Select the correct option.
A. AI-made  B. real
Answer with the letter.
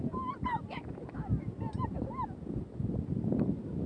B